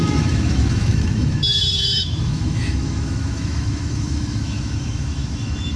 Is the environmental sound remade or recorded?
remade